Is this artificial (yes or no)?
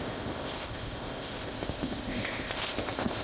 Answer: yes